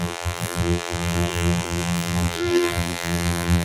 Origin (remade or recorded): remade